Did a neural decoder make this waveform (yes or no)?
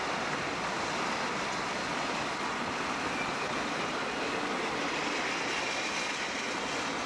no